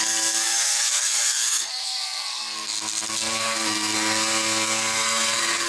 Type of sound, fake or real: fake